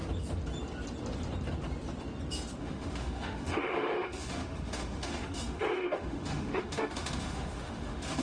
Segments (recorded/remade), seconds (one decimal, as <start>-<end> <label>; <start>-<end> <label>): 0.0-2.6 recorded; 2.6-8.2 remade